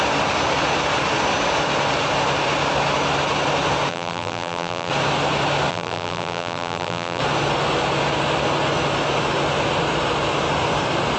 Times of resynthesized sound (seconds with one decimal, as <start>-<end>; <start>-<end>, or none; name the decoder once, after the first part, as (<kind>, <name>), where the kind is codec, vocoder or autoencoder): 3.9-4.9 (vocoder, BigVGAN v2); 5.7-7.2